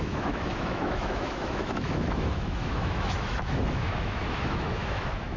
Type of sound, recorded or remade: remade